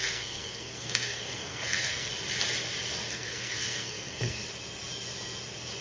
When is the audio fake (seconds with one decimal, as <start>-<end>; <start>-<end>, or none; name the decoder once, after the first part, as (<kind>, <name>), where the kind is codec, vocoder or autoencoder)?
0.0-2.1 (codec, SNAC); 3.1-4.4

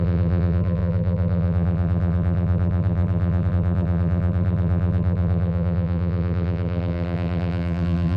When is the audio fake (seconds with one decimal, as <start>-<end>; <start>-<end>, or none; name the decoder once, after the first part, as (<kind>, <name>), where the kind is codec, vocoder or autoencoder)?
0.0-8.2 (vocoder, BigVGAN v2)

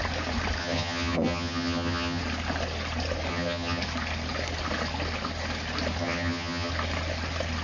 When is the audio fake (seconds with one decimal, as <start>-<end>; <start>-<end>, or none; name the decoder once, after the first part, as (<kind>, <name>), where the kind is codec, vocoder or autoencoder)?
0.6-2.2 (vocoder, HiFi-GAN); 3.3-3.8; 6.0-6.7

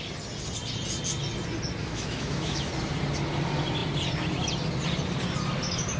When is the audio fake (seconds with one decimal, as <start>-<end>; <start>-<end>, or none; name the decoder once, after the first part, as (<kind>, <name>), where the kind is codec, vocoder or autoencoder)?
1.8-2.7 (autoencoder, DAC-VAE)

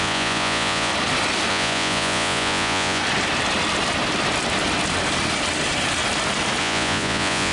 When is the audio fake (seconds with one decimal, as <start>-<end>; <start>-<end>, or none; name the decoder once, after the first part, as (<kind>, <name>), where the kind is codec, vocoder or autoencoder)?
0.0-0.9 (vocoder, Vocos); 1.5-3.0; 6.6-7.5